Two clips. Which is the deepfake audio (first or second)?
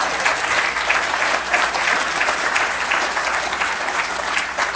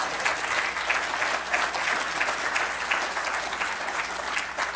first